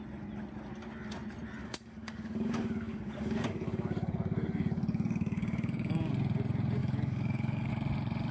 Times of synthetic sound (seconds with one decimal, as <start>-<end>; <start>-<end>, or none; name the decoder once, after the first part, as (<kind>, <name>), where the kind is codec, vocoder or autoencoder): 1.6-6.1 (codec, DAC); 6.8-7.7